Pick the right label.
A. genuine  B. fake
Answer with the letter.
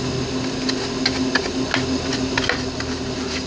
A